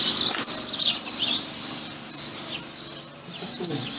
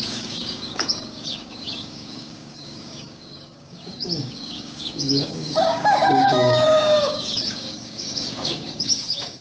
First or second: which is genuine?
first